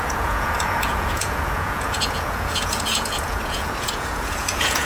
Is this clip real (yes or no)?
no